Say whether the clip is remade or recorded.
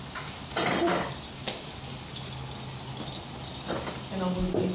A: recorded